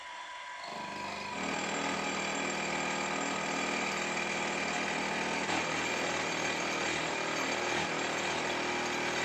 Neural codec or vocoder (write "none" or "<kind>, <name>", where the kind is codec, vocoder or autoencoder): none